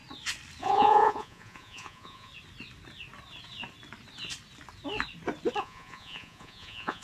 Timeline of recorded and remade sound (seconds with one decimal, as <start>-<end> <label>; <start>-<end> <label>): 0.0-0.6 recorded; 0.6-2.3 remade; 2.3-5.6 recorded; 5.6-7.0 remade